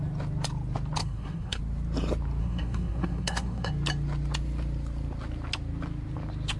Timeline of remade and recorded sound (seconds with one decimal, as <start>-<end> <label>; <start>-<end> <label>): 0.0-1.0 recorded; 1.0-1.6 remade; 1.6-2.4 recorded; 2.4-3.7 remade; 3.7-6.6 recorded